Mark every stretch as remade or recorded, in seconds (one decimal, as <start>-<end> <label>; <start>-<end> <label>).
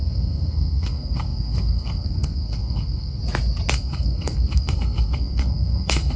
0.0-3.2 remade; 3.2-3.7 recorded; 3.7-6.2 remade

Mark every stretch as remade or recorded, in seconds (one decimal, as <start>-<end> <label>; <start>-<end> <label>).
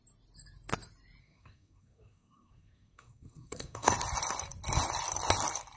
0.0-1.2 recorded; 1.2-3.9 remade; 3.9-5.8 recorded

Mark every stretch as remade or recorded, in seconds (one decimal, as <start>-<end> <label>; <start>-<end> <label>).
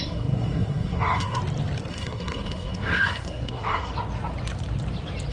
0.0-1.4 remade; 1.4-1.9 recorded; 1.9-3.9 remade; 3.9-5.3 recorded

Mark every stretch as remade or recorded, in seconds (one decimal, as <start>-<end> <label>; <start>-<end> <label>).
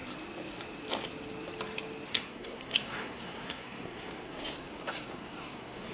0.0-2.1 recorded; 2.1-5.9 remade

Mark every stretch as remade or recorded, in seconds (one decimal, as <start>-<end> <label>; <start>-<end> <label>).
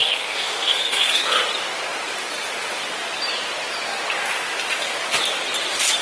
0.0-1.4 remade; 1.4-6.0 recorded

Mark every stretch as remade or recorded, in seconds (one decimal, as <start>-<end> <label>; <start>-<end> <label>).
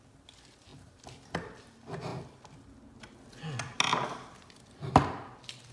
0.0-5.7 recorded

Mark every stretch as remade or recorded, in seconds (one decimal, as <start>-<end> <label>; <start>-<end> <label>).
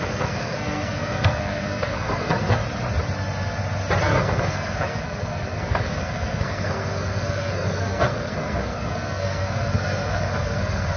0.0-2.6 remade; 2.6-4.0 recorded; 4.0-11.0 remade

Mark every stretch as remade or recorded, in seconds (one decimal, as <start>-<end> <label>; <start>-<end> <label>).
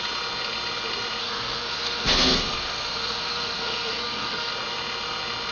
0.0-1.2 recorded; 1.2-4.5 remade; 4.5-5.5 recorded